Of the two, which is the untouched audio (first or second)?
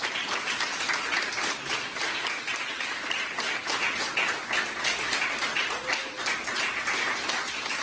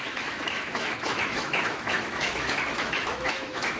first